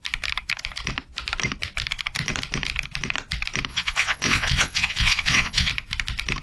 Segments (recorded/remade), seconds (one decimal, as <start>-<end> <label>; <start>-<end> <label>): 0.0-3.7 recorded; 3.7-5.7 remade; 5.7-6.4 recorded